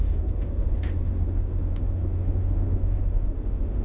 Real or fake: fake